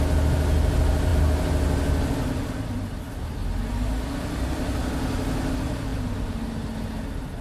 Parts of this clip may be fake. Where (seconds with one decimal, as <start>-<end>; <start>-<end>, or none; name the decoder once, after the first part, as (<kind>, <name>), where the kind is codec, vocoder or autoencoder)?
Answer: none